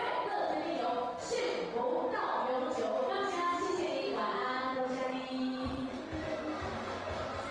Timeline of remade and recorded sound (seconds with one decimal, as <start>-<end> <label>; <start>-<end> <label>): 0.0-4.7 recorded; 4.7-6.0 remade; 6.0-7.5 recorded